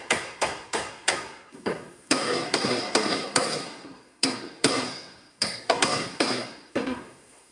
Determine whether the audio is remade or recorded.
remade